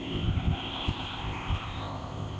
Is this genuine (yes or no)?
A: no